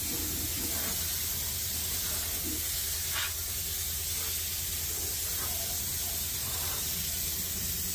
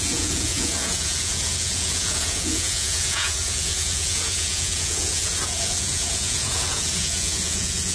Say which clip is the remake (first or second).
second